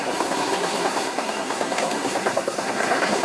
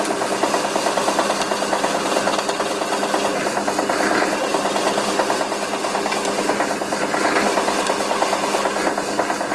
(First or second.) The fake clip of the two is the first